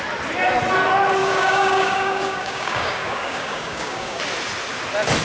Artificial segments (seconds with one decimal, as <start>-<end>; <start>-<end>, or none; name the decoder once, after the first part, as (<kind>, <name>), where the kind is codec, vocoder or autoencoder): 1.2-4.2 (codec, DAC)